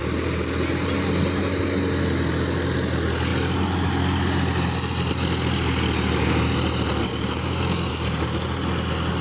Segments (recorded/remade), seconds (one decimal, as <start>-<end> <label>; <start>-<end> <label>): 0.0-7.1 recorded; 7.1-7.9 remade; 7.9-9.2 recorded